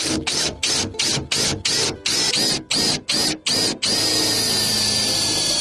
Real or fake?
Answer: real